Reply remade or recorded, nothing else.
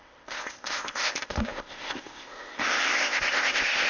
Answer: remade